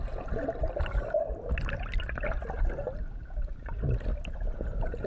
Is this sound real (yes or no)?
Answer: yes